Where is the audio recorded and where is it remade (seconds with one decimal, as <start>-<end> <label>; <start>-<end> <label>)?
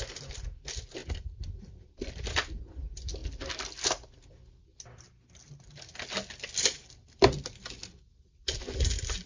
0.0-9.3 recorded